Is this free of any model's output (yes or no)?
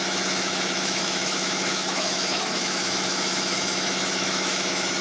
no